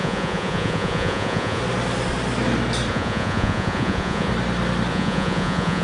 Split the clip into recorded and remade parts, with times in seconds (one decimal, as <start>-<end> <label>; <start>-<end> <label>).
0.0-1.6 remade; 1.6-2.9 recorded; 2.9-4.3 remade; 4.3-4.9 recorded; 4.9-5.8 remade